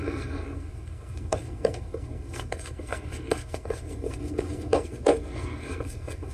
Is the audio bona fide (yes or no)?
no